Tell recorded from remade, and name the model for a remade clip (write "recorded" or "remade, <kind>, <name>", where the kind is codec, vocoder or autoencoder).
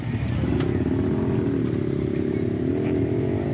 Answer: recorded